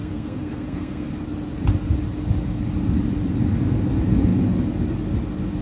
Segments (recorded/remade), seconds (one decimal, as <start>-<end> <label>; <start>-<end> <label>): 0.0-1.1 remade; 1.1-5.6 recorded